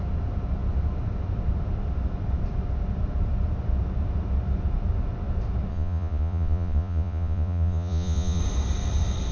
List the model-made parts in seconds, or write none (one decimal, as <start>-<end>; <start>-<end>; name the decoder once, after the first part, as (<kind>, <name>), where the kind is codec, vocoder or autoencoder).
5.7-8.4 (vocoder, Vocos)